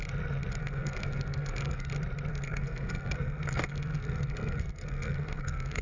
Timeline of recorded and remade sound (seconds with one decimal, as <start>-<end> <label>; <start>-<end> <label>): 0.0-0.6 recorded; 0.6-1.9 remade; 1.9-2.3 recorded; 2.3-5.8 remade